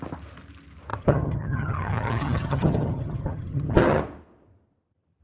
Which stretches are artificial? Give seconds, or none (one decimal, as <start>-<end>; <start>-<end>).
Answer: 0.9-4.0